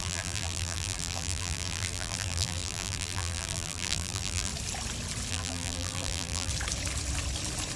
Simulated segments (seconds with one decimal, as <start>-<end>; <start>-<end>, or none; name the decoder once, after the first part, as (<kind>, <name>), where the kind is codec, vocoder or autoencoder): 0.0-4.5 (vocoder, BigVGAN v2); 5.3-6.5